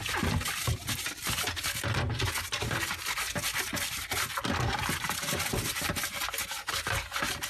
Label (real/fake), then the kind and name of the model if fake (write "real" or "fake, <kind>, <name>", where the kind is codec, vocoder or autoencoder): real